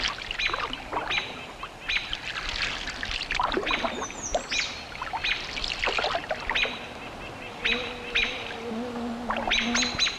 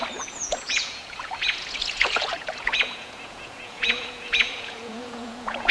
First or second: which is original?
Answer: first